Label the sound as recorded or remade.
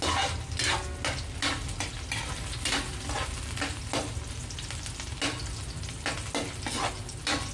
recorded